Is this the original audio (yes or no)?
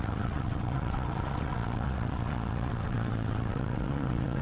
no